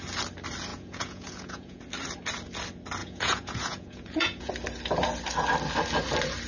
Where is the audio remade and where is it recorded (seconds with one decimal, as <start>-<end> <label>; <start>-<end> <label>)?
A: 0.0-0.7 recorded; 0.7-1.8 remade; 1.8-3.0 recorded; 3.0-4.5 remade; 4.5-6.5 recorded